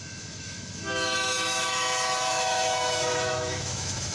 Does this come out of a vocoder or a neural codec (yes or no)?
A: yes